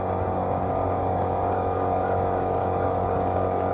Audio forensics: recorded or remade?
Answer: remade